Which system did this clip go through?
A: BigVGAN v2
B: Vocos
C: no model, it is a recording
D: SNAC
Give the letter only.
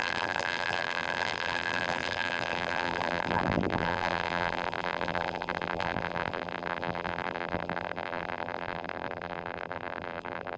A